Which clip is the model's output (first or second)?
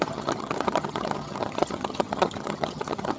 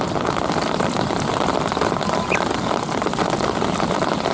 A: first